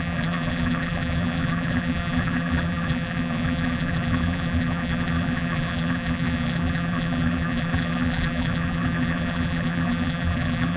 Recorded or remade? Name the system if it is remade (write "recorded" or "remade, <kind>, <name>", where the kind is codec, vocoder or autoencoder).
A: remade, vocoder, BigVGAN v2